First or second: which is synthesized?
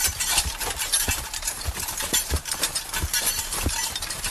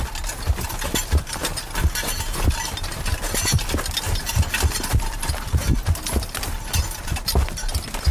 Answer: first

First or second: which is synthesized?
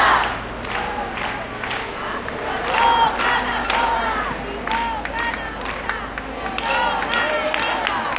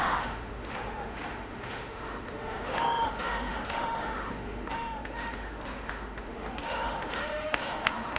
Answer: second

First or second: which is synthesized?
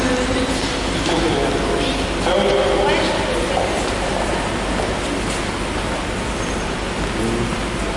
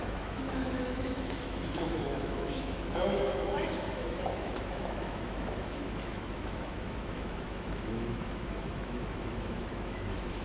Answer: second